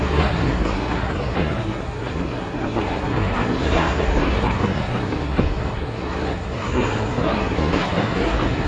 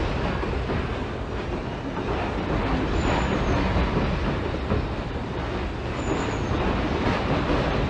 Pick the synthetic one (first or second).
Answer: first